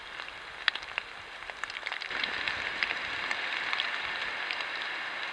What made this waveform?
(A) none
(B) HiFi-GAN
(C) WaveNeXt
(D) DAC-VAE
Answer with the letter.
A